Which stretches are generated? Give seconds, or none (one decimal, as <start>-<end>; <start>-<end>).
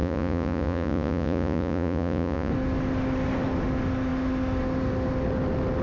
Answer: 0.0-2.5